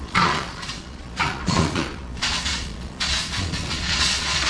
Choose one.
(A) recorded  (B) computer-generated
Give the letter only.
B